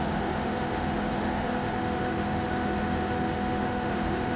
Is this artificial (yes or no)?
yes